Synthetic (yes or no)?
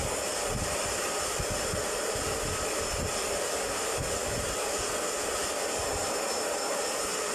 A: no